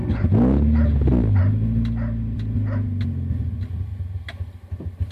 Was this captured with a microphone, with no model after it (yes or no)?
yes